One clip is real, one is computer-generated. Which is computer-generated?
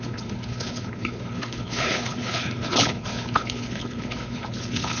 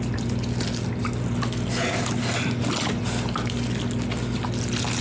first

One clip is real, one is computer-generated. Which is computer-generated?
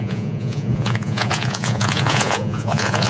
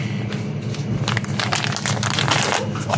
first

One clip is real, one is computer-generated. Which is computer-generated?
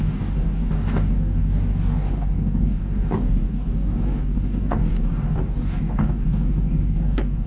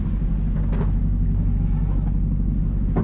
first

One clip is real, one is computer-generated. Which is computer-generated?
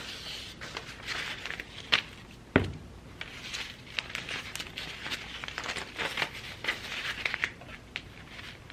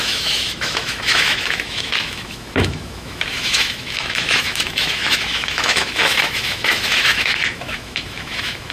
second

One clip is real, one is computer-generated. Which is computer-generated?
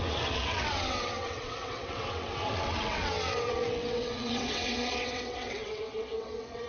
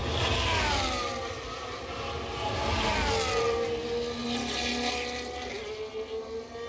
first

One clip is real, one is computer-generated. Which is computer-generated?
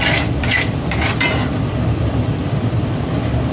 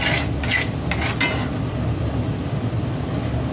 first